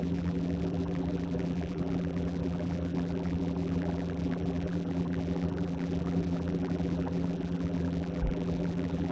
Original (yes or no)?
no